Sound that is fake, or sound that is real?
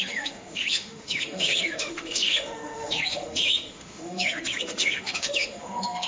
fake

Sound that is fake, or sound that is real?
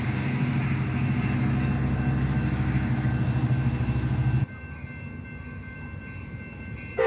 real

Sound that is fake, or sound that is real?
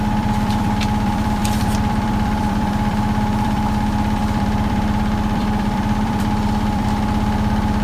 fake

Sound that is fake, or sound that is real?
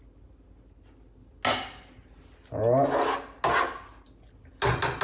real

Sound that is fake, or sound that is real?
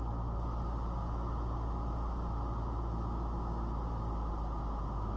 real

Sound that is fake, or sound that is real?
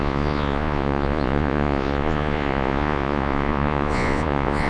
fake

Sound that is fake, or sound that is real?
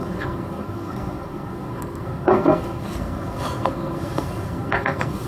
fake